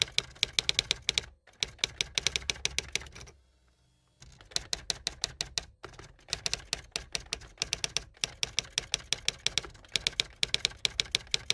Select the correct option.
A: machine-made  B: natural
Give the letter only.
B